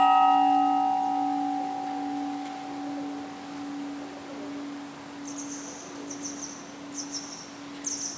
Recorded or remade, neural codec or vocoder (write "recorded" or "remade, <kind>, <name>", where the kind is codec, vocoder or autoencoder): recorded